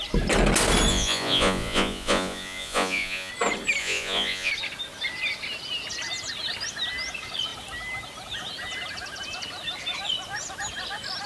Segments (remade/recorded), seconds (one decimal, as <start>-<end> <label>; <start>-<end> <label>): 0.0-0.9 recorded; 0.9-3.3 remade; 3.3-3.8 recorded; 3.8-4.5 remade; 4.5-11.3 recorded